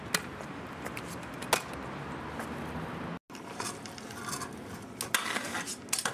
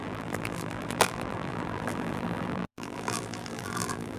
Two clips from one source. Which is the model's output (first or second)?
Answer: second